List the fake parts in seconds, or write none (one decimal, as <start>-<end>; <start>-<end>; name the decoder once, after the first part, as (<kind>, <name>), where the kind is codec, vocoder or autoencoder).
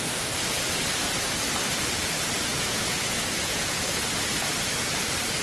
2.5-4.1 (vocoder, Vocos)